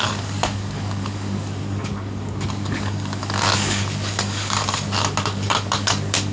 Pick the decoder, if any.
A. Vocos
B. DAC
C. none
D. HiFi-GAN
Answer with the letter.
B